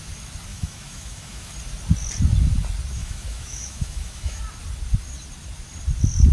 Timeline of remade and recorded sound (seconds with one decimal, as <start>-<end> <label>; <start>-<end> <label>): 0.0-0.5 recorded; 0.5-1.5 remade; 1.5-3.0 recorded; 3.0-4.4 remade; 4.4-6.3 recorded